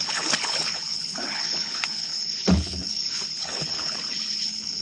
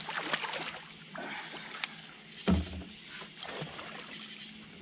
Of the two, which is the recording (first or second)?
second